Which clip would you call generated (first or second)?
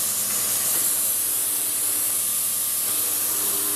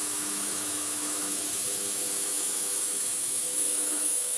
second